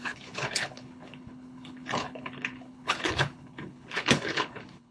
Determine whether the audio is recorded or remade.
remade